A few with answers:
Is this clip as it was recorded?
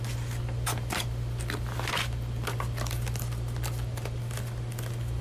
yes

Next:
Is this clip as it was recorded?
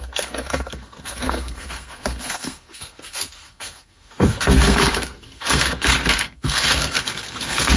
no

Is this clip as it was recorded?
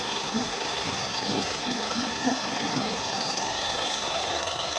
no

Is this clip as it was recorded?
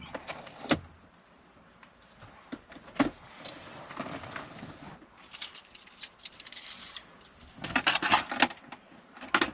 yes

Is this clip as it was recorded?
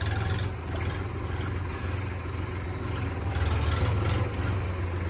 yes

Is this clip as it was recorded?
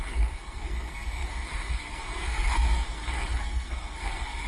no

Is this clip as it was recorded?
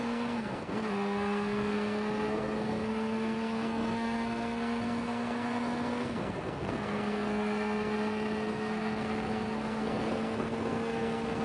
no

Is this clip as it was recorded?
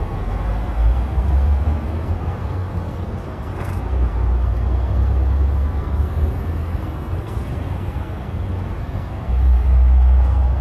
no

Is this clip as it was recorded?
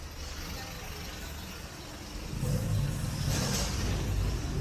yes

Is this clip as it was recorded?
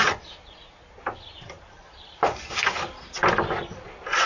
yes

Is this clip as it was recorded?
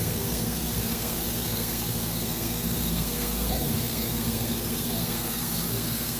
no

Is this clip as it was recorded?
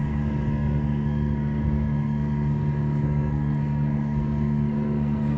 no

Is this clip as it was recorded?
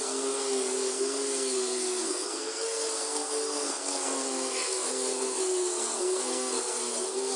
no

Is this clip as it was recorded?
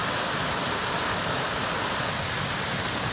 yes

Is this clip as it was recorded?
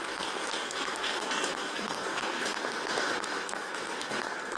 no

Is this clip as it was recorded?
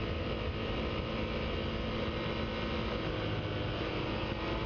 yes